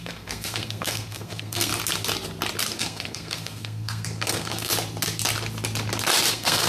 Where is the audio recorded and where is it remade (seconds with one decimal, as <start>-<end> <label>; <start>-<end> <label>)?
0.0-1.7 remade; 1.7-2.8 recorded; 2.8-4.7 remade; 4.7-6.3 recorded; 6.3-6.7 remade